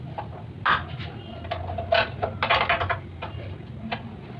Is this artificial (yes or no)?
no